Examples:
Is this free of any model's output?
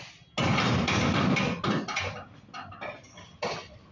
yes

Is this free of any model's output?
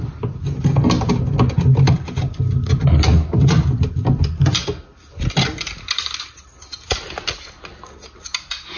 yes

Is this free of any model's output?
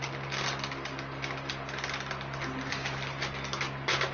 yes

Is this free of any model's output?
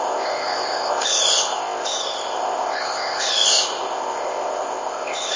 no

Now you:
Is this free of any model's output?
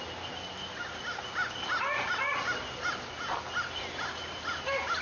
yes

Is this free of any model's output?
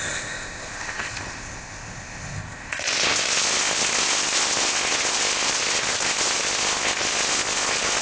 no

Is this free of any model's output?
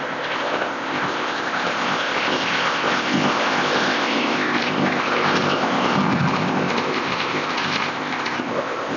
no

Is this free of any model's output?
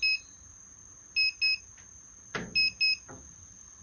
yes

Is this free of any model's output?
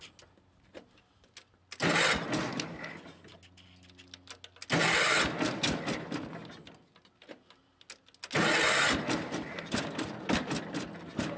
yes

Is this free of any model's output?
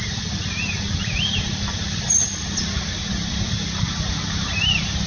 yes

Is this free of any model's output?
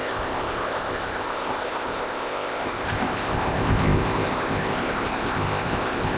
no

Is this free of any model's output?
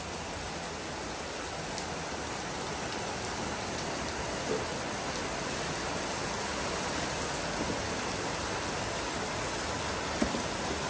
yes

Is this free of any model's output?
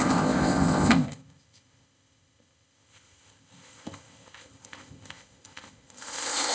no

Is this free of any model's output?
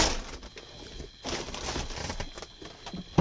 yes